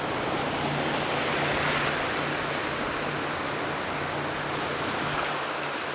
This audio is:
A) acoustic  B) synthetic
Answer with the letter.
A